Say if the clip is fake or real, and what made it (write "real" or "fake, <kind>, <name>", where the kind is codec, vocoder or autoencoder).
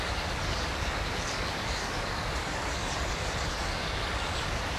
fake, codec, DAC